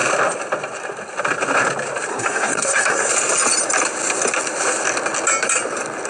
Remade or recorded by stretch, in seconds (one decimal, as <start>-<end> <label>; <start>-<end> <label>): 0.0-2.1 recorded; 2.1-3.1 remade; 3.1-6.1 recorded